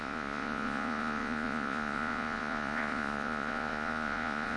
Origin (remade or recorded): remade